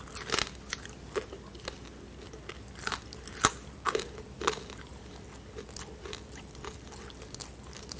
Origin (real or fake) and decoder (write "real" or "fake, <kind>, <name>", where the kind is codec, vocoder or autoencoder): real